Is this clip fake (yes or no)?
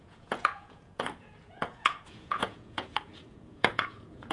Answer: yes